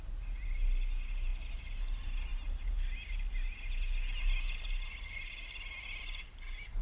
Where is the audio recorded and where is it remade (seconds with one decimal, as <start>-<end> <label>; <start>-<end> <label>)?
0.0-6.8 recorded